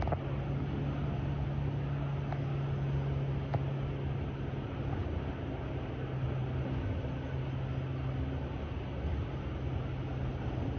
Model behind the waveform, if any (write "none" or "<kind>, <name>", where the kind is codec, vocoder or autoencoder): none